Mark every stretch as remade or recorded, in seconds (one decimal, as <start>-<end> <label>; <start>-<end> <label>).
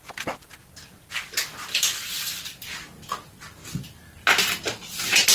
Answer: 0.0-5.3 recorded